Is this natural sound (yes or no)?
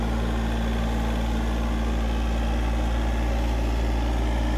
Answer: yes